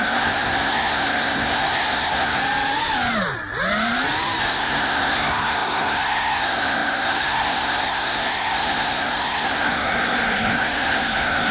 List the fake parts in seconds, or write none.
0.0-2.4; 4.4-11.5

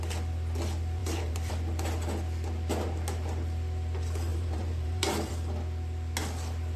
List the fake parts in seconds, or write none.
1.0-1.5; 4.3-5.3

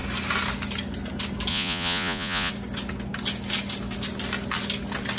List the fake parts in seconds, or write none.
1.5-2.5

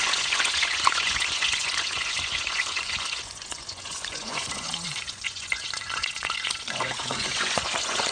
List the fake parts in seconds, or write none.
0.0-8.1